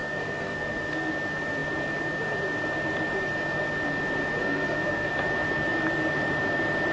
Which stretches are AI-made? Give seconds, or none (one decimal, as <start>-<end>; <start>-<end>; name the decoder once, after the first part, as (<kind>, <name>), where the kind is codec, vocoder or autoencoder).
0.0-1.1 (codec, SNAC); 4.4-5.1